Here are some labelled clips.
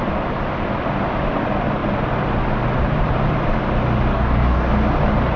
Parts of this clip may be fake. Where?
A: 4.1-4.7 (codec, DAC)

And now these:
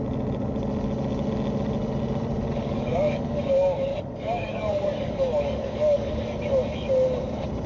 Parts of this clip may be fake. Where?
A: 2.6-3.4 (codec, DAC); 3.9-6.4

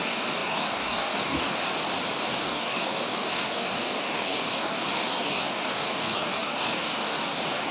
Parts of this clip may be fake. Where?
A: 0.0-1.7 (codec, DAC); 2.3-7.7

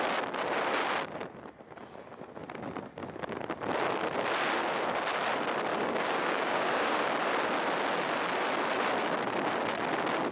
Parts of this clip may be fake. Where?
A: 5.7-7.0 (codec, DAC)

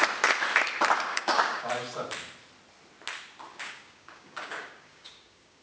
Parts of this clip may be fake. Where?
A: 1.1-1.7 (codec, DAC); 3.5-5.6

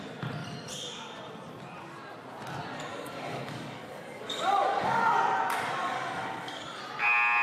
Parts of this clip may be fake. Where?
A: 2.9-5.0 (codec, DAC); 5.8-6.8

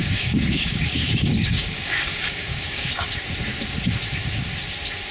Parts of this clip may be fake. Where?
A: 0.0-3.1 (codec, DAC)